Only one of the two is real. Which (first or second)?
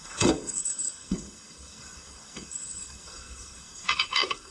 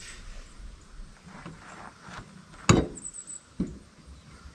second